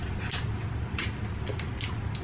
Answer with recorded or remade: recorded